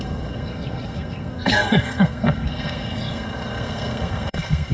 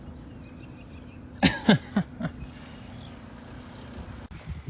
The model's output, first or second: first